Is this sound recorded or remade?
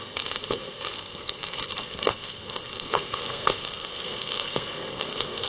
remade